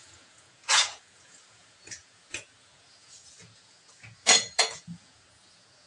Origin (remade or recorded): remade